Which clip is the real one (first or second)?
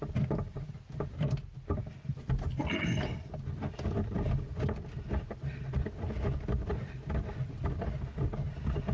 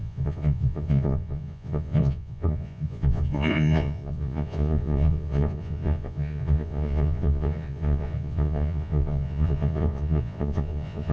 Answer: first